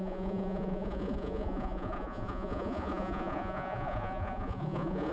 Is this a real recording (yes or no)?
no